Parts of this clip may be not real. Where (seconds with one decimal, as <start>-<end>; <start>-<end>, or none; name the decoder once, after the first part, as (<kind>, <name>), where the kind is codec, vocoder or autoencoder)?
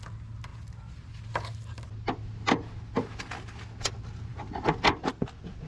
none